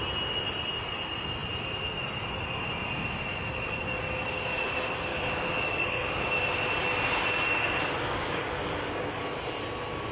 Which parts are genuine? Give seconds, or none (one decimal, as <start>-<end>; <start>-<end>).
0.0-5.1; 6.2-7.6; 9.1-10.1